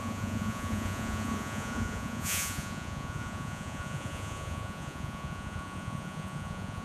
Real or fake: fake